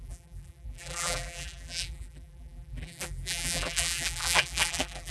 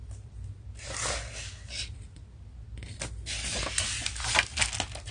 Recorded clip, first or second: second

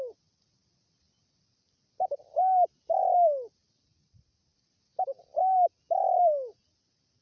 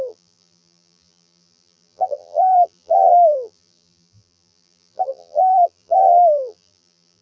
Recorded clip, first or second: first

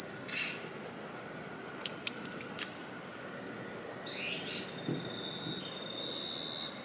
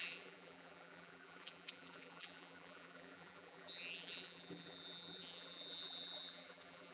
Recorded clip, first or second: first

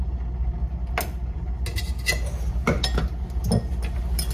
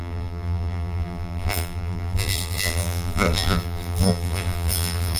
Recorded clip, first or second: first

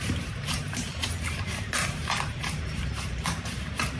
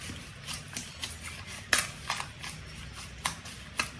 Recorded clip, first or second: second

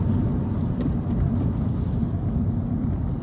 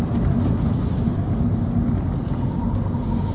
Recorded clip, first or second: second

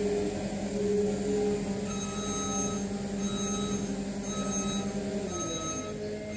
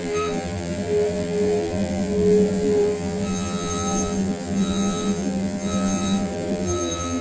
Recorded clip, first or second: first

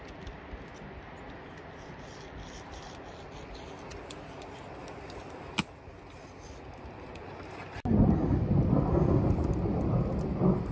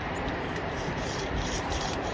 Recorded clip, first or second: first